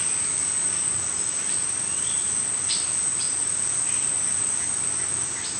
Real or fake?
real